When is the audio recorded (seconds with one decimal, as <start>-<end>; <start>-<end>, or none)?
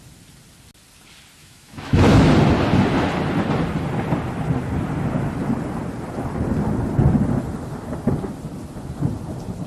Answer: 0.0-1.4; 2.3-9.7